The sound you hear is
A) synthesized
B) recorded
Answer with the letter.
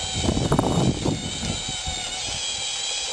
B